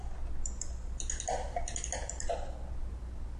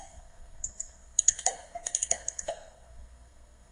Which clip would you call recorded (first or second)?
first